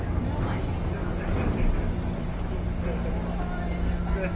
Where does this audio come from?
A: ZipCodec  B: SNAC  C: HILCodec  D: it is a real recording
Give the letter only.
D